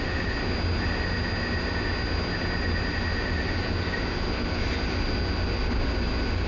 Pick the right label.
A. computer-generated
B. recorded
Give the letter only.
B